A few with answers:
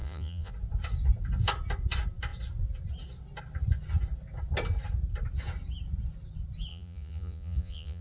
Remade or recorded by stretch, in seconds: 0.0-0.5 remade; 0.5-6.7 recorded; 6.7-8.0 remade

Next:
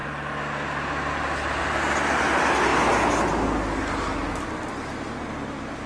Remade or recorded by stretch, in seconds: 0.0-5.9 recorded

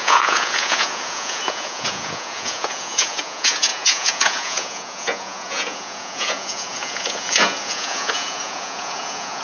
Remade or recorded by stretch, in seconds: 0.0-9.4 remade

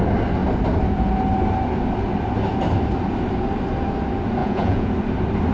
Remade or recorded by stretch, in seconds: 0.0-4.4 recorded; 4.4-4.9 remade; 4.9-5.5 recorded

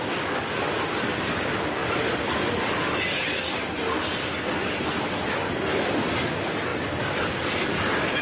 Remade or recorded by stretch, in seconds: 0.0-8.2 recorded